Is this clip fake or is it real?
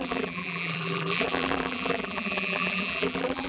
fake